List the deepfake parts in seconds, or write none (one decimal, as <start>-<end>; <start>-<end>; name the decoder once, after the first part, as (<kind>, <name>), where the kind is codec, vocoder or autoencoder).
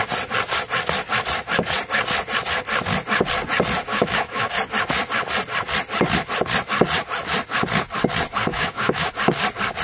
3.9-4.5 (autoencoder, DAC-VAE); 8.5-9.1